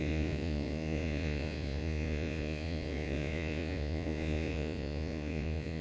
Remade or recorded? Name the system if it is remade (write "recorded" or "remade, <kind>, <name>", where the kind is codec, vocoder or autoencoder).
remade, vocoder, Vocos